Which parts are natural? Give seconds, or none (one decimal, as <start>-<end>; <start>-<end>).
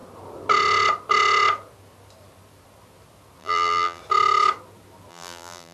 0.0-3.4; 4.0-5.1